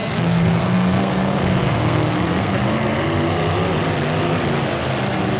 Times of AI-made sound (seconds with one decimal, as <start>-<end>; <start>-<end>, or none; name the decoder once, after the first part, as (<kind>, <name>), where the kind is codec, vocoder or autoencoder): 0.0-2.6 (codec, SNAC)